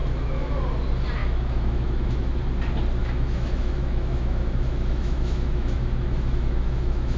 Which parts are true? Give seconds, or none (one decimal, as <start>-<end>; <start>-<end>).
0.6-1.2; 2.4-3.0